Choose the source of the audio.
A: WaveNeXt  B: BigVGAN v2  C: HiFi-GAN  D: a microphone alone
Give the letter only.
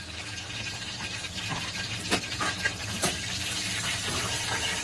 B